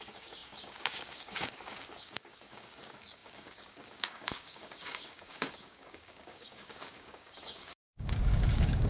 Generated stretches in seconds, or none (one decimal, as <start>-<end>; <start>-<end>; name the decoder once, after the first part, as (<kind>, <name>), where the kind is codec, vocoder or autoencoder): 0.0-8.9 (codec, DAC)